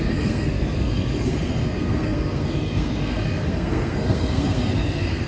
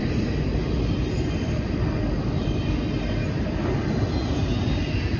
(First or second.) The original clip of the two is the second